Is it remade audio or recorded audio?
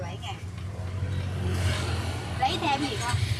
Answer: recorded